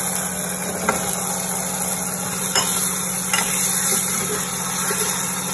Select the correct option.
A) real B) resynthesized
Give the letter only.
A